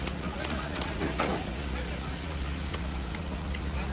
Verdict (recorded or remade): remade